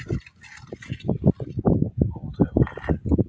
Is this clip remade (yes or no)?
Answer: no